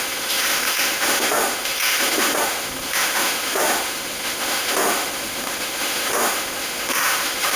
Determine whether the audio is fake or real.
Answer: fake